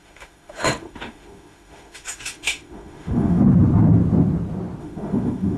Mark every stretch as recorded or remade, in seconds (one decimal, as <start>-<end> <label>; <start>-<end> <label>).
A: 0.0-3.4 remade; 3.4-4.8 recorded; 4.8-5.6 remade